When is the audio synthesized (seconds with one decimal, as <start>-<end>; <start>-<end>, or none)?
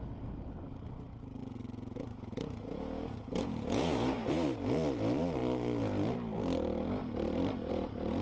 1.4-4.3